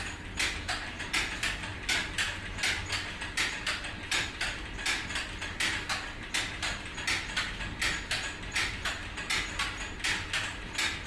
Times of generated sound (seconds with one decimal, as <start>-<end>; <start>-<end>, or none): none